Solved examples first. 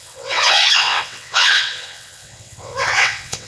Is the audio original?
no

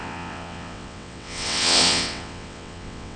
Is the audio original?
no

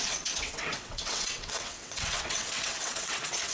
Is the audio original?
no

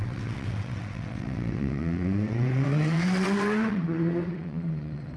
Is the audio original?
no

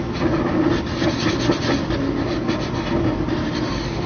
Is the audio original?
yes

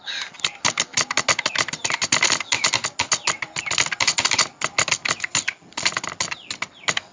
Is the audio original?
yes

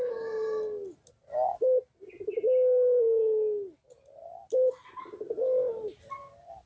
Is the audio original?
yes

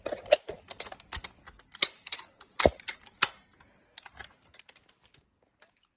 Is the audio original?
yes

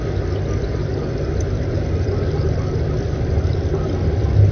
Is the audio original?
yes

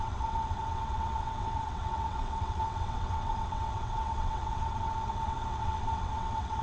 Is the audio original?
no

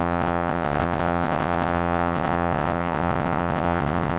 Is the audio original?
no